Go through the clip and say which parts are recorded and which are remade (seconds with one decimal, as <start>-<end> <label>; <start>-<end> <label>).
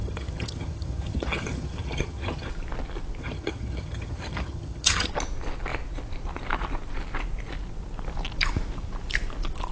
0.0-2.5 remade; 2.5-3.2 recorded; 3.2-5.1 remade; 5.1-9.7 recorded